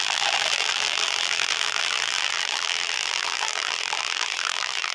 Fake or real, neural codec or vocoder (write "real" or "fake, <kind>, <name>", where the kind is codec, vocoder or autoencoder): fake, vocoder, BigVGAN v2